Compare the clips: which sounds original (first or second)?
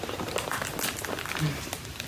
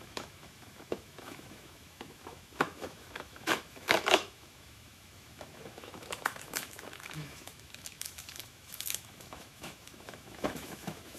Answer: first